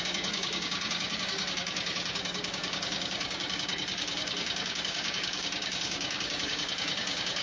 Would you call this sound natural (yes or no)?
no